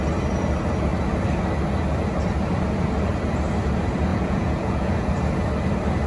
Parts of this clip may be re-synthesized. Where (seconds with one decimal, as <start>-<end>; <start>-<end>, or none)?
4.1-5.1